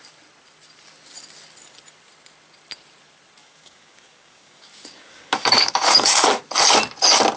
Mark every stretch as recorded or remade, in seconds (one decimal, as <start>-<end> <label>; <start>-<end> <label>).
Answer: 0.0-3.4 recorded; 3.4-6.4 remade; 6.4-7.4 recorded